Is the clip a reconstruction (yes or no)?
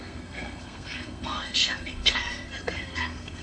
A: yes